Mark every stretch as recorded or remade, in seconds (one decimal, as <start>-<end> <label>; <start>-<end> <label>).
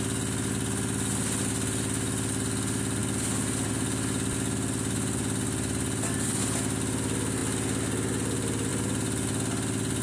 0.0-10.0 recorded